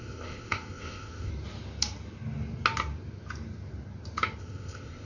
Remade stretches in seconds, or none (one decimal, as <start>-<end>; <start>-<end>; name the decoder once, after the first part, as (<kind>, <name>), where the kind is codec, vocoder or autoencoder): 0.0-1.3 (codec, ZipCodec); 4.4-5.1